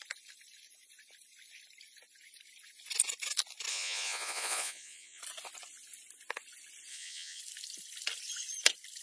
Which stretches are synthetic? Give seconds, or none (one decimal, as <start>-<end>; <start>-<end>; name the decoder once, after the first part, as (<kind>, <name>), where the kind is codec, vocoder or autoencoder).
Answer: 3.7-5.2 (vocoder, Vocos); 6.9-7.4